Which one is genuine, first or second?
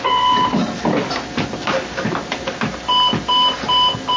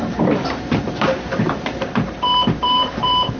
first